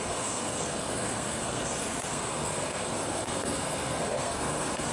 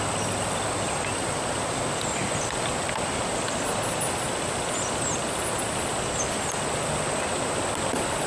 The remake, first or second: first